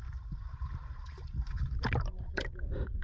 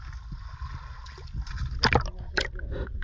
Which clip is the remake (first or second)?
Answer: first